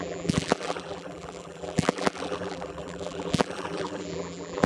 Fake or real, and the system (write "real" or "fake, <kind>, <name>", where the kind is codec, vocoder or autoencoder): fake, vocoder, BigVGAN v2